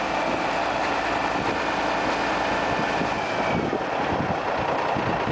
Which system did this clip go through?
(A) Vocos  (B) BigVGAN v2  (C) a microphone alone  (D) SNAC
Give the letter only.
C